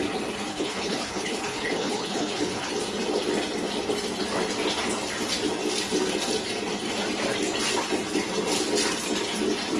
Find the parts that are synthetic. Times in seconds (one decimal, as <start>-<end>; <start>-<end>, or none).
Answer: 0.5-2.7

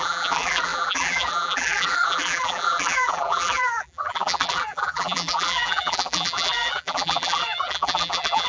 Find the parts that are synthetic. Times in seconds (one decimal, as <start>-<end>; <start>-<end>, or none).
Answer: 0.0-8.5

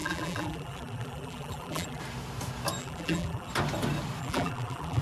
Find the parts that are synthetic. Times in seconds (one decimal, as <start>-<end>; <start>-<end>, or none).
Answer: 0.0-2.0; 2.8-3.5; 4.2-5.0

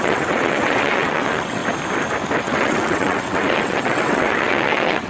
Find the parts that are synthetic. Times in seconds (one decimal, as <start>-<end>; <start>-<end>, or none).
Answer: 0.0-1.6; 2.4-5.1

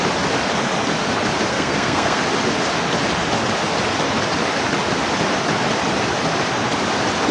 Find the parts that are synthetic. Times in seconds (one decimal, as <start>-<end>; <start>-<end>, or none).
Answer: 1.5-2.2

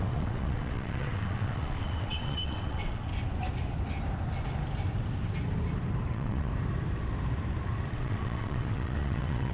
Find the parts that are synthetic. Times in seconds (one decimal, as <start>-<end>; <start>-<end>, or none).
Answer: 0.0-3.1; 6.1-6.5; 7.9-9.5